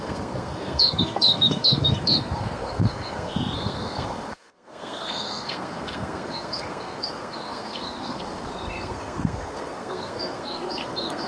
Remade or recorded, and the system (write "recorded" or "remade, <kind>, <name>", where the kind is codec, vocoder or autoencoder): remade, codec, SNAC